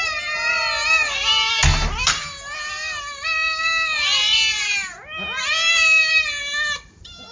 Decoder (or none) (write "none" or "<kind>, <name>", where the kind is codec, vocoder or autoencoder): none